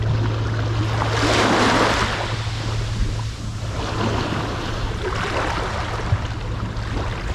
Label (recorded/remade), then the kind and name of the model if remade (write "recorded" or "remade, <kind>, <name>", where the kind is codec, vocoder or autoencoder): recorded